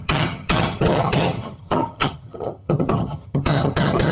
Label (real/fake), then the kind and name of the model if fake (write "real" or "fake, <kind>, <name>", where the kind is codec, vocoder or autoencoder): fake, vocoder, HiFi-GAN